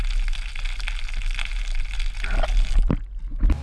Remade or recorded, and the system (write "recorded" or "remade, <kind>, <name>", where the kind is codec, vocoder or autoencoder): recorded